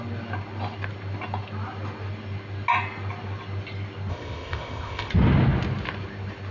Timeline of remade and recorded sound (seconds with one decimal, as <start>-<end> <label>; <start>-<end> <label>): 0.0-4.1 recorded; 4.1-5.1 remade; 5.1-6.5 recorded